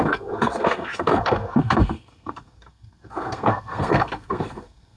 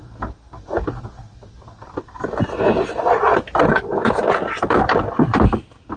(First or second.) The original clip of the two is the second